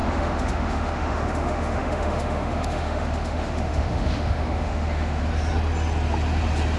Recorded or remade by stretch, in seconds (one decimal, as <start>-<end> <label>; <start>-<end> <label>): 0.0-5.2 remade; 5.2-6.8 recorded